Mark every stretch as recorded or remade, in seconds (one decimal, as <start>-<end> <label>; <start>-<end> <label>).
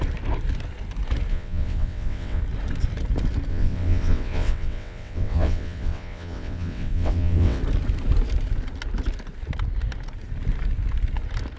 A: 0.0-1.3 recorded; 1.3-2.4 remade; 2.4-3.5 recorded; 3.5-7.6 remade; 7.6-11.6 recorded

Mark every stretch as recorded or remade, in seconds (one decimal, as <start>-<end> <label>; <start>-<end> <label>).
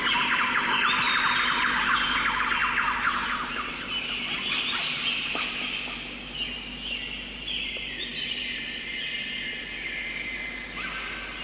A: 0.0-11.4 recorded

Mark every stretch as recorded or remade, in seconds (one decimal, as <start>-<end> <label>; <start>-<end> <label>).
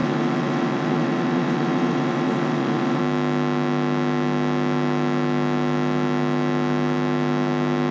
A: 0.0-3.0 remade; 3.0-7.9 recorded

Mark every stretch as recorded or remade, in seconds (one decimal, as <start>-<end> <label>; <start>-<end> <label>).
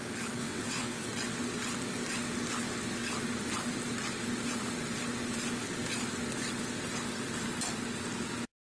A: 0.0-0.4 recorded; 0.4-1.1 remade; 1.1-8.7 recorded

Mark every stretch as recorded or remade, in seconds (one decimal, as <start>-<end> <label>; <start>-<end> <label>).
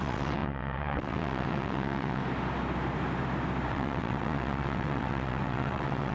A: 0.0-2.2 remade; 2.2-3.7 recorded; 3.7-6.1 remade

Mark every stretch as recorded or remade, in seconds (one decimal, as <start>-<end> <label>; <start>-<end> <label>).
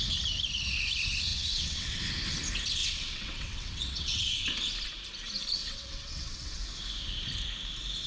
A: 0.0-1.3 recorded; 1.3-2.0 remade; 2.0-2.8 recorded; 2.8-4.4 remade; 4.4-5.6 recorded; 5.6-6.6 remade; 6.6-8.1 recorded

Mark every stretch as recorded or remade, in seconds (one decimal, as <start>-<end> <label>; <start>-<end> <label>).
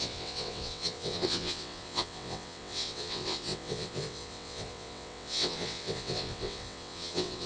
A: 0.0-7.5 remade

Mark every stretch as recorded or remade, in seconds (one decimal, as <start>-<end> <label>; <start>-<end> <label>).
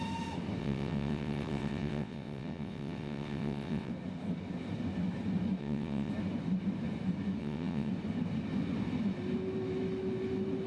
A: 0.0-0.6 recorded; 0.6-3.9 remade; 3.9-5.6 recorded; 5.6-6.1 remade; 6.1-7.4 recorded; 7.4-7.9 remade; 7.9-10.7 recorded